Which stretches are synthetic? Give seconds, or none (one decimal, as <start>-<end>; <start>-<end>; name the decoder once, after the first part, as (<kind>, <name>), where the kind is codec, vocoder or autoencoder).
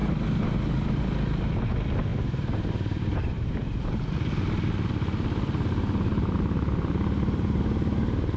2.1-4.0 (vocoder, BigVGAN v2)